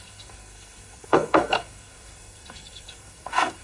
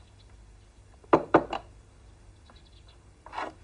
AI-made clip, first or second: first